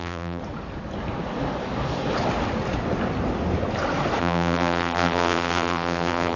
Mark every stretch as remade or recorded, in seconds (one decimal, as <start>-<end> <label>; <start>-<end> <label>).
0.0-0.4 remade; 0.4-4.2 recorded; 4.2-6.4 remade